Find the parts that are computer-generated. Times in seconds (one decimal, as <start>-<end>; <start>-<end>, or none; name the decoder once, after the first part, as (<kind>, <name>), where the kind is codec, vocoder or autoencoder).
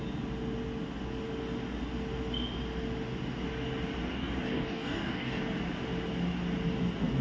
4.1-5.4 (codec, DAC)